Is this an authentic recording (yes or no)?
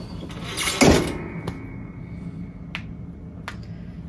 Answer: yes